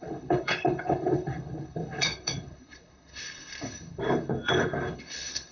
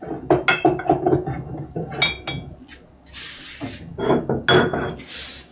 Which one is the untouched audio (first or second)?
second